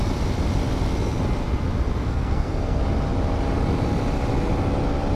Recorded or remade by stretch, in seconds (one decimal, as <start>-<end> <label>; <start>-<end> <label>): 0.0-2.0 recorded; 2.0-2.8 remade; 2.8-5.1 recorded